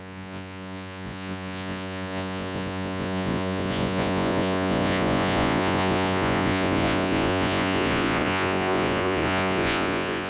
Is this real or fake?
fake